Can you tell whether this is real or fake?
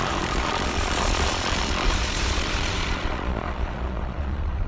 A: fake